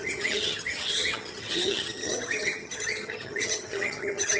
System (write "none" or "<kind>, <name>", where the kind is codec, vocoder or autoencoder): vocoder, HiFi-GAN